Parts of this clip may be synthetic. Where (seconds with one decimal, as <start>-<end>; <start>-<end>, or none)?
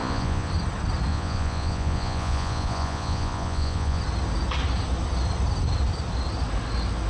0.0-0.5; 1.1-4.0